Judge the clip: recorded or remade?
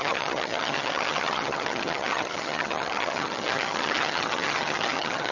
remade